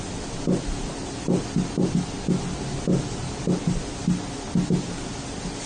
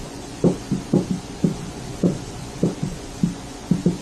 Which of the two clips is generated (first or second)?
second